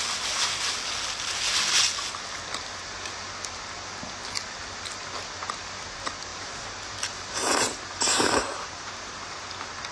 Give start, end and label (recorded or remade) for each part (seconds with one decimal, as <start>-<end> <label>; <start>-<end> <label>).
0.0-6.3 recorded; 6.3-8.9 remade; 8.9-9.9 recorded